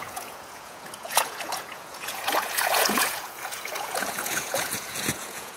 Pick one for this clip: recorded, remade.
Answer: remade